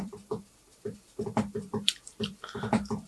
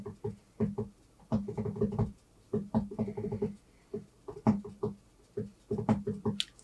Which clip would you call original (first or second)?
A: second